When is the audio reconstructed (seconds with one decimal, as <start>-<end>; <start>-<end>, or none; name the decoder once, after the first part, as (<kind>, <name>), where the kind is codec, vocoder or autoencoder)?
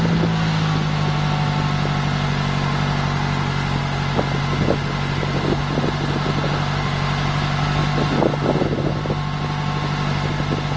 none